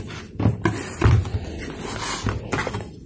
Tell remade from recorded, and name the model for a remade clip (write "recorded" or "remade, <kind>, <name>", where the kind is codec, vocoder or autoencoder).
recorded